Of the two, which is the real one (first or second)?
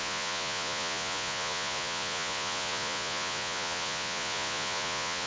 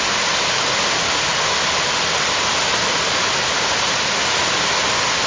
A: second